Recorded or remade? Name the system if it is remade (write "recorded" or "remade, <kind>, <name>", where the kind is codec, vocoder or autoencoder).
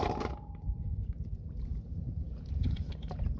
remade, vocoder, BigVGAN v2